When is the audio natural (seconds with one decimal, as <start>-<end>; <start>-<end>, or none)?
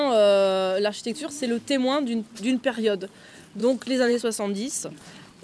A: 0.0-3.6; 4.2-5.4